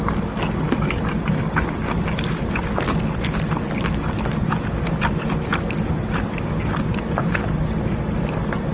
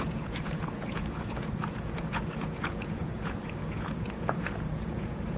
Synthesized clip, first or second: second